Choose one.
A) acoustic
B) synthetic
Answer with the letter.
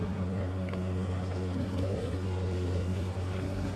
B